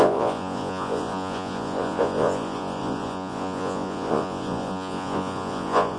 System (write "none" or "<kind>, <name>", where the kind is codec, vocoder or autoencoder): vocoder, Vocos